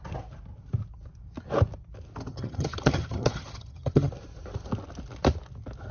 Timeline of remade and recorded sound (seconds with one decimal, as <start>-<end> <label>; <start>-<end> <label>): 0.0-2.3 recorded; 2.3-4.1 remade; 4.1-5.9 recorded